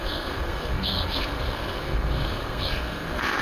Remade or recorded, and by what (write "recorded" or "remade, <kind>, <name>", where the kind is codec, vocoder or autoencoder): remade, codec, SNAC